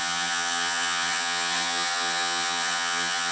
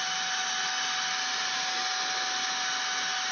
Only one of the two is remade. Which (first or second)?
first